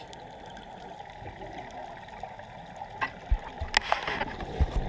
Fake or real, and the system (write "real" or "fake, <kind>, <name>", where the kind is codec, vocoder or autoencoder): real